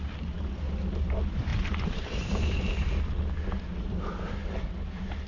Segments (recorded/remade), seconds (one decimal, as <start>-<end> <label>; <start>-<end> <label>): 0.0-1.5 recorded; 1.5-4.7 remade; 4.7-5.3 recorded